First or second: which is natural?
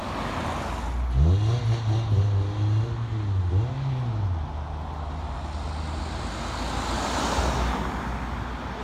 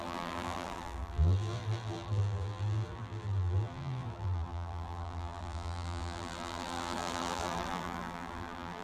first